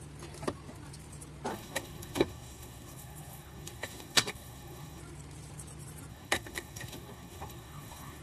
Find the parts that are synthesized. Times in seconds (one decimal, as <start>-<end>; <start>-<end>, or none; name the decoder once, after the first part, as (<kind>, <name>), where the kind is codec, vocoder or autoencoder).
1.5-5.0 (codec, SNAC); 6.1-8.2